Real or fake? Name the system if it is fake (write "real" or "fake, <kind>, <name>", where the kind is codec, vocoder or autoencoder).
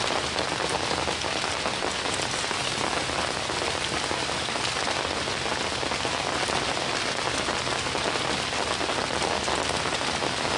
real